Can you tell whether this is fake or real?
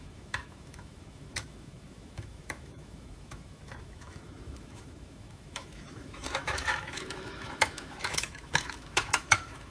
fake